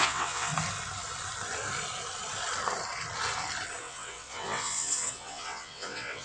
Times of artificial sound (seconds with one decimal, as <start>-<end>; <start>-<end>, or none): 0.0-0.5; 3.8-6.2